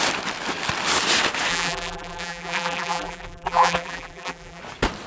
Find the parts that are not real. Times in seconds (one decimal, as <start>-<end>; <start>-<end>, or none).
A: 1.5-4.6